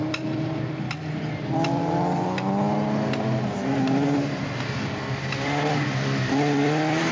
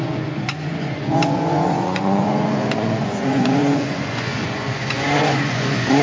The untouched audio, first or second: first